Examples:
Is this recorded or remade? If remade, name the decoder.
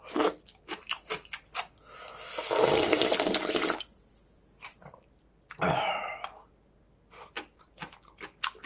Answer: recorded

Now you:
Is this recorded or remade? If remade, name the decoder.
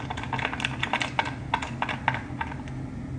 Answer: recorded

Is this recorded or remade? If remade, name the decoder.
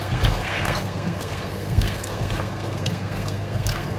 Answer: remade, codec, SNAC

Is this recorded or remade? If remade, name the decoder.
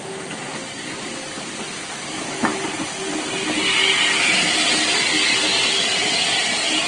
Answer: recorded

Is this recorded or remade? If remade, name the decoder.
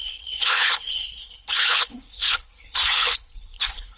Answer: remade, codec, HILCodec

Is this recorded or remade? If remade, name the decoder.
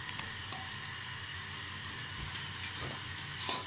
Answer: recorded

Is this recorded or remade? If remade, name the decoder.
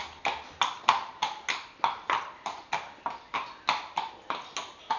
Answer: recorded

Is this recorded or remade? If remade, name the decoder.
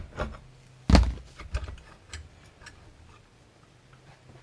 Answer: recorded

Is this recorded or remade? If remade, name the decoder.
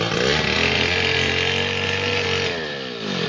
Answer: recorded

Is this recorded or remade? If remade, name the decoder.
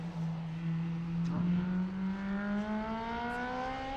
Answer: recorded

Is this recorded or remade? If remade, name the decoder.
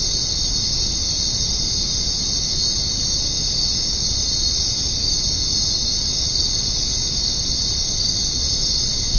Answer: recorded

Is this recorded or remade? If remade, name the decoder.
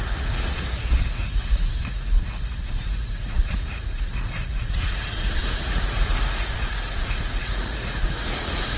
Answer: remade, vocoder, Vocos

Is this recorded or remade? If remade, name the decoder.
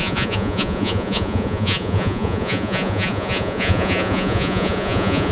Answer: remade, vocoder, Vocos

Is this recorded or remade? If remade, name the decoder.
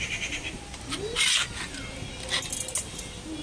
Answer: recorded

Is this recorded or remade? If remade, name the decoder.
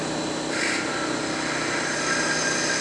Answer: recorded